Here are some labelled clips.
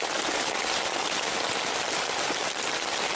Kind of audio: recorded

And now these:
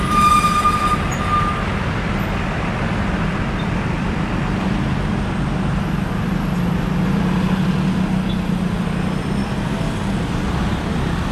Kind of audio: recorded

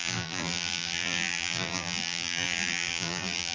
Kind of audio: remade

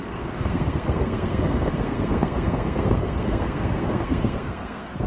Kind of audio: remade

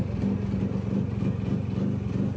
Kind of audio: recorded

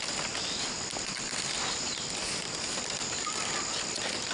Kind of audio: recorded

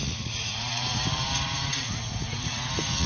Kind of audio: remade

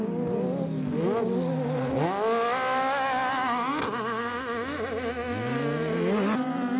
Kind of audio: recorded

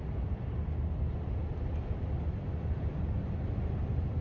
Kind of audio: recorded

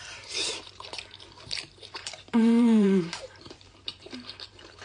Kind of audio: remade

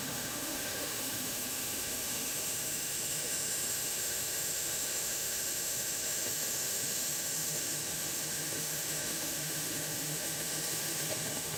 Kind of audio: remade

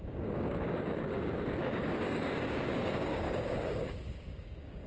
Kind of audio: remade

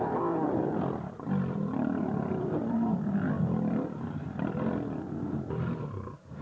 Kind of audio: recorded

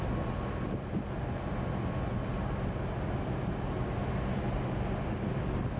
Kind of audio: recorded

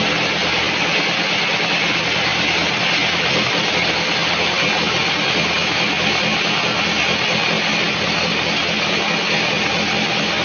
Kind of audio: recorded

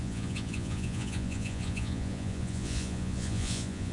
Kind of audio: remade